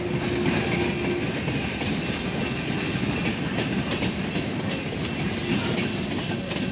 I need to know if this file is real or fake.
real